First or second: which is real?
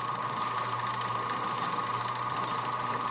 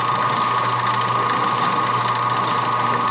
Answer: second